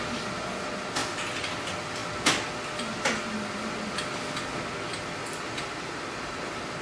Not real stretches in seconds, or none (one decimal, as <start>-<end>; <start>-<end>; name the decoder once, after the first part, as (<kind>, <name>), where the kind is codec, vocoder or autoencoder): none